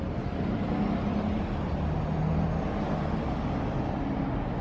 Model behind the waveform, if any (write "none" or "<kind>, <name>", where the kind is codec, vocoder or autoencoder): none